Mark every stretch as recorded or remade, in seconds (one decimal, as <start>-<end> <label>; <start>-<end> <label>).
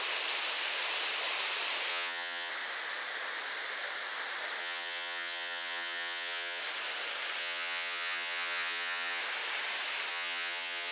0.0-1.9 recorded; 1.9-2.5 remade; 2.5-4.6 recorded; 4.6-6.6 remade; 6.6-7.4 recorded; 7.4-9.2 remade; 9.2-10.1 recorded; 10.1-10.9 remade